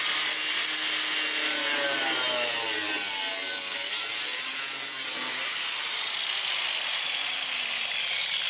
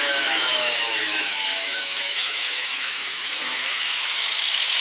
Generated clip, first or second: second